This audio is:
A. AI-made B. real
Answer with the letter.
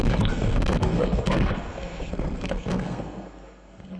A